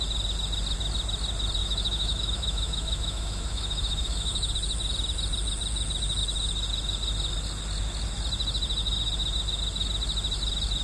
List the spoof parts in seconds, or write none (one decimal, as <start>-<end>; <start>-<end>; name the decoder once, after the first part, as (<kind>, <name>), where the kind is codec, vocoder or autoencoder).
1.6-4.5 (autoencoder, DAC-VAE)